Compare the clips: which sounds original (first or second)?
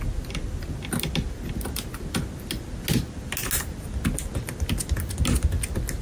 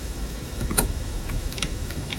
first